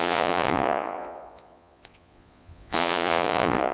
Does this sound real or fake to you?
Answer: fake